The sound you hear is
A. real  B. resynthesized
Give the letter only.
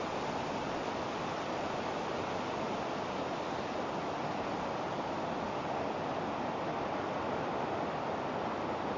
A